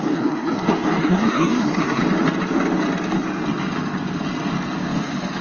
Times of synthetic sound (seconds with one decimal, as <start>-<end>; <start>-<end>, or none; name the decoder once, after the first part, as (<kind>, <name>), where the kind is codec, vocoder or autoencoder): 0.0-2.0 (codec, SNAC)